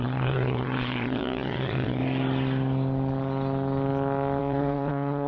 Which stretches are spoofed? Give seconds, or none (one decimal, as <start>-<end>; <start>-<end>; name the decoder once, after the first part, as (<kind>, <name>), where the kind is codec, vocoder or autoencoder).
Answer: 0.0-2.0 (vocoder, Vocos); 4.4-5.3